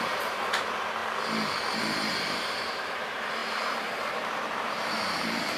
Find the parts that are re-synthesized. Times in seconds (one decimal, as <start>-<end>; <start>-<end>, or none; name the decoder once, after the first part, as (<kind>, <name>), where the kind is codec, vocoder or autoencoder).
0.0-1.0 (vocoder, BigVGAN v2); 1.8-5.6